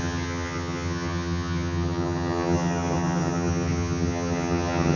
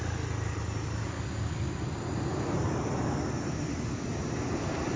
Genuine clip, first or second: second